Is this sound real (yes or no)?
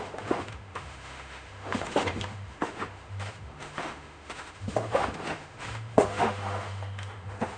no